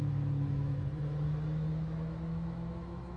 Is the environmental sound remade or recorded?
remade